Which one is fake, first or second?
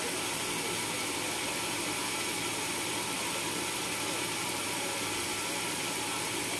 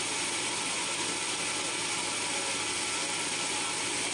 first